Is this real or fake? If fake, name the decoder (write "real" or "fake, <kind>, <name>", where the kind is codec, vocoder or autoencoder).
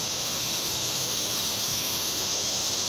fake, autoencoder, DAC-VAE